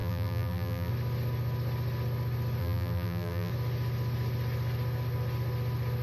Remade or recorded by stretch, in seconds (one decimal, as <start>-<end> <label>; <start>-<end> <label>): 0.0-0.9 remade; 0.9-2.6 recorded; 2.6-3.5 remade; 3.5-6.0 recorded